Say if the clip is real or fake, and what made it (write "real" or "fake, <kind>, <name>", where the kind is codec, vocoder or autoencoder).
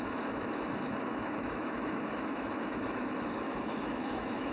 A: fake, autoencoder, DAC-VAE